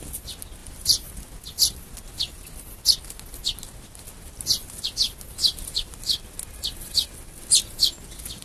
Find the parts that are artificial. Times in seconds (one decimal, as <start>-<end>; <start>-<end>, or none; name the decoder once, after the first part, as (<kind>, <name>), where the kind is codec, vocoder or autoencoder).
0.6-1.1 (vocoder, BigVGAN v2); 5.4-6.0